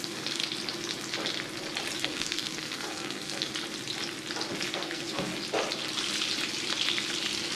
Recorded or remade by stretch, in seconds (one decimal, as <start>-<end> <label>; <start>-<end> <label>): 0.0-0.4 remade; 0.4-2.0 recorded; 2.0-3.5 remade; 3.5-4.7 recorded; 4.7-5.3 remade; 5.3-7.6 recorded